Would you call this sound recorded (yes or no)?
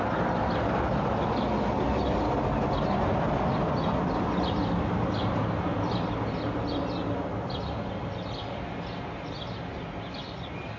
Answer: yes